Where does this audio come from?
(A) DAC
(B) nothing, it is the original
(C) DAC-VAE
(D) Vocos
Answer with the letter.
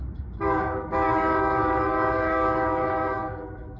A